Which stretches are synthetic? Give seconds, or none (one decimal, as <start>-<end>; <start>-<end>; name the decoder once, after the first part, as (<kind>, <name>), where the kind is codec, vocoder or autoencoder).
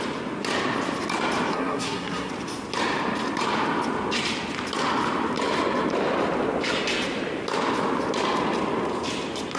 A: 1.5-2.3 (codec, SNAC)